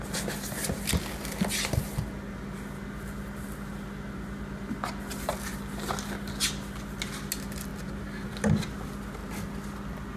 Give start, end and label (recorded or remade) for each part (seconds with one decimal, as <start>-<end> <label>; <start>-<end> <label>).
0.0-10.2 recorded